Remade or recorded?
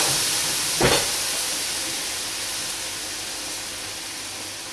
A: recorded